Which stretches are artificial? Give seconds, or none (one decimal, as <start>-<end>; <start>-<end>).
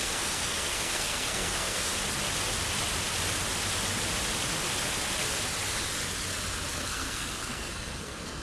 0.0-1.9; 6.7-8.4